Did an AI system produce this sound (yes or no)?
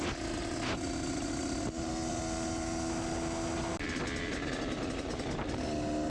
no